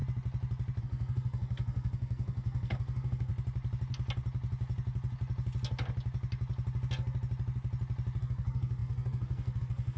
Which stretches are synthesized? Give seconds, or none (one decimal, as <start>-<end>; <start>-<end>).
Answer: 0.8-3.3; 8.2-10.0